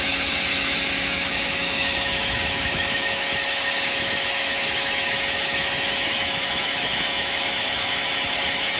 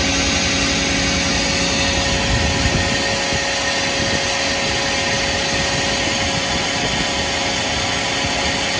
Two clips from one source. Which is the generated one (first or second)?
first